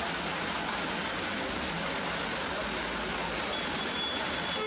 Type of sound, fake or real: real